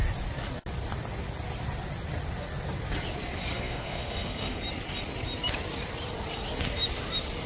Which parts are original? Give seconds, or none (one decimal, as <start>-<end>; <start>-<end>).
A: 0.0-3.5; 4.6-7.5